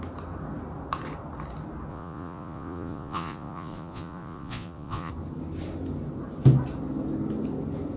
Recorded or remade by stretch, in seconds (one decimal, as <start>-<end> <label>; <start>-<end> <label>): 0.0-1.9 recorded; 1.9-5.1 remade; 5.1-8.0 recorded